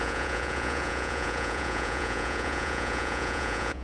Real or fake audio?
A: fake